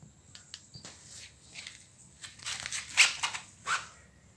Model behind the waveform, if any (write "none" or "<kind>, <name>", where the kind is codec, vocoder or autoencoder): none